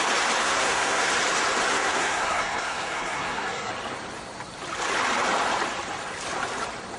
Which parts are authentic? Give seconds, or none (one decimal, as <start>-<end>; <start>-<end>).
0.0-0.4; 1.1-1.7; 3.7-7.0

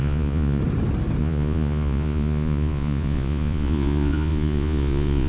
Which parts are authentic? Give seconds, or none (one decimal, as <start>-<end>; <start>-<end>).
0.6-1.2

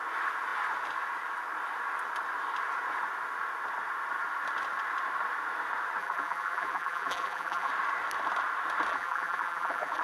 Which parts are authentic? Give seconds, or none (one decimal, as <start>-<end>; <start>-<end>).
0.0-6.0; 7.7-8.9